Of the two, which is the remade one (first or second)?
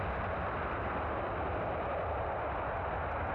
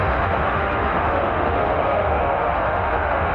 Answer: second